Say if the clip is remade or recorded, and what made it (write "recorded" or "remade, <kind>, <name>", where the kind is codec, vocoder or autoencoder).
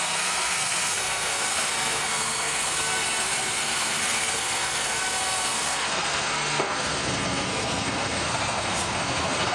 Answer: remade, codec, SNAC